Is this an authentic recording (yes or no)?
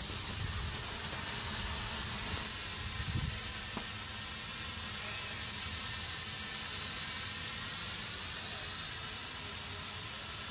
yes